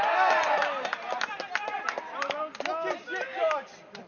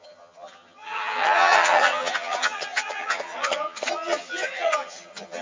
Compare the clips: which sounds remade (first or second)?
second